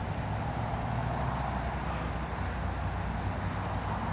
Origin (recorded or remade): recorded